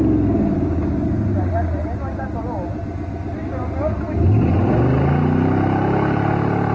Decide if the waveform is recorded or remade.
recorded